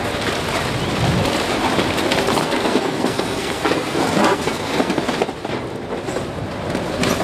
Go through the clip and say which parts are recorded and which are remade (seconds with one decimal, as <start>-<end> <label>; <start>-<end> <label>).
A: 0.0-2.4 recorded; 2.4-5.1 remade; 5.1-7.2 recorded